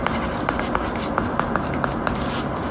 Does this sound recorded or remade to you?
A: recorded